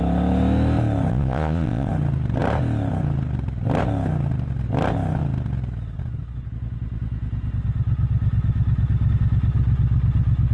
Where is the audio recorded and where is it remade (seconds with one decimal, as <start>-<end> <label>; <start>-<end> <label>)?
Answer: 0.0-1.1 recorded; 1.1-1.9 remade; 1.9-10.5 recorded